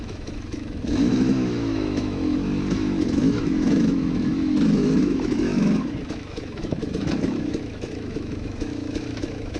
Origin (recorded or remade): remade